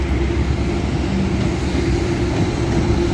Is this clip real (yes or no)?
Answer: yes